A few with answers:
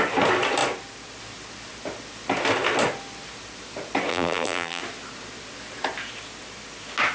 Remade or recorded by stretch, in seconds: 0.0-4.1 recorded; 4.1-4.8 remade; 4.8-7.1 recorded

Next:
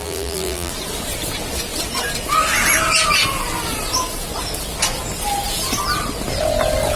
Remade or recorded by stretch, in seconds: 0.0-0.7 remade; 0.7-7.0 recorded

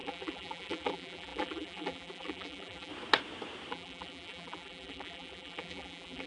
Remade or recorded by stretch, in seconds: 0.0-2.9 remade; 2.9-3.7 recorded; 3.7-6.3 remade

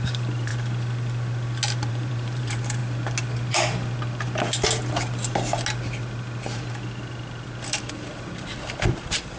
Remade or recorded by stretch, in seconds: 0.0-0.5 remade; 0.5-1.9 recorded; 1.9-2.8 remade; 2.8-7.9 recorded; 7.9-9.4 remade

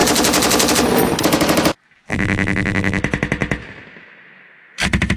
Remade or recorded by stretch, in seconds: 0.0-2.1 recorded; 2.1-3.0 remade; 3.0-5.2 recorded